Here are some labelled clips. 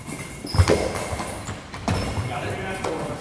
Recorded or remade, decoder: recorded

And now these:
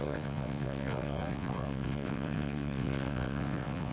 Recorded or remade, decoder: remade, vocoder, WaveNeXt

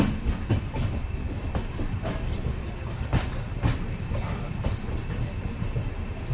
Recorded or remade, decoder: recorded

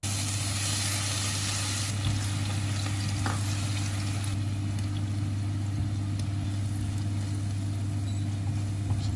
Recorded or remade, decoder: recorded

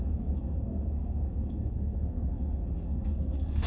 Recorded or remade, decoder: remade, codec, SNAC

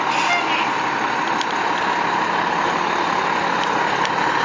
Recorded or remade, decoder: recorded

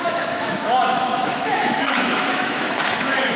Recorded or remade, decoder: remade, autoencoder, DAC-VAE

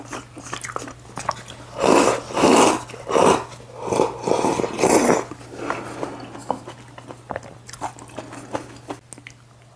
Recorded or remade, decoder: recorded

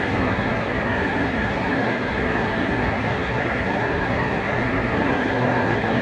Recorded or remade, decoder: remade, codec, SNAC